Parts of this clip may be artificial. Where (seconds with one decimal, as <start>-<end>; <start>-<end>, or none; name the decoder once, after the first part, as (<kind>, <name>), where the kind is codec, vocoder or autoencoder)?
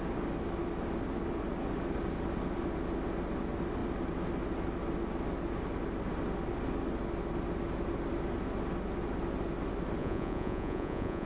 10.0-11.3 (vocoder, Vocos)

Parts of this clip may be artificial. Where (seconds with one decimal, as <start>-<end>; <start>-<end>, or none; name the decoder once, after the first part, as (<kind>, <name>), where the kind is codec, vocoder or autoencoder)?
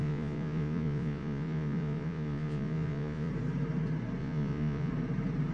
0.0-3.3 (vocoder, Vocos); 4.2-4.9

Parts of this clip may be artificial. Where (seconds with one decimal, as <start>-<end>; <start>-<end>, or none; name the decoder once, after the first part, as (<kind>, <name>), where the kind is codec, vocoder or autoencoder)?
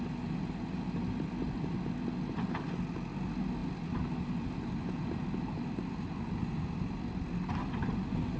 none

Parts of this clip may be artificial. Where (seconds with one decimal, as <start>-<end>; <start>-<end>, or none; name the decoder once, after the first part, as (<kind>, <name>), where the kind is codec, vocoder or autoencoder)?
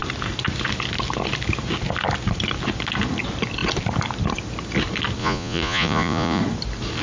5.2-6.4 (vocoder, Vocos)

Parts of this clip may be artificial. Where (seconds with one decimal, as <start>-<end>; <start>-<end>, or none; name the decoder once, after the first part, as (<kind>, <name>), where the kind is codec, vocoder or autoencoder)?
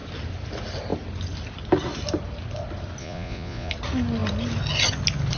3.0-3.7 (vocoder, Vocos)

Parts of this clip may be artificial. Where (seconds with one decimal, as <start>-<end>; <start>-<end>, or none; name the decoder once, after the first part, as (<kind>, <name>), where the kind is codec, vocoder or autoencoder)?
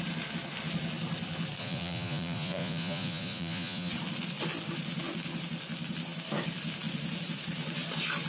1.6-3.9 (vocoder, Vocos)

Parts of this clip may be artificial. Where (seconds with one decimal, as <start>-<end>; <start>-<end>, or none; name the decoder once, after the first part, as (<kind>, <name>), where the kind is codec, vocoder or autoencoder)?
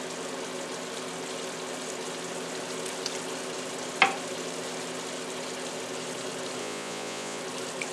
6.6-7.4 (vocoder, Vocos)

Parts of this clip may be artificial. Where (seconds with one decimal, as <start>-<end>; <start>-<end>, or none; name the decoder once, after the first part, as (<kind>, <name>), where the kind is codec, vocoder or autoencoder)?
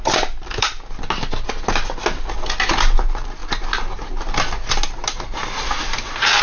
none